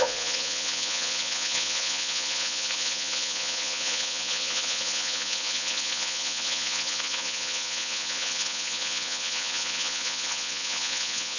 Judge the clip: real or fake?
fake